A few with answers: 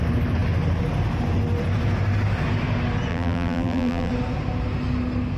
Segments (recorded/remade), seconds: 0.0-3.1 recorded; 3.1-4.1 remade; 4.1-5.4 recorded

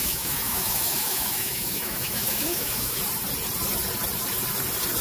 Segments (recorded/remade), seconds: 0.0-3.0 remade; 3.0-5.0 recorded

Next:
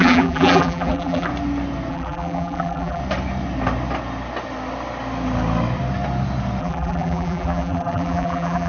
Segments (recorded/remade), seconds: 0.0-1.3 remade; 1.3-1.9 recorded; 1.9-3.0 remade; 3.0-6.6 recorded; 6.6-8.7 remade